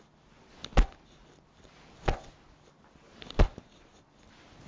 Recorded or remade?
recorded